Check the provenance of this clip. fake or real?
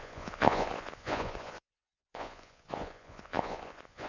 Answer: fake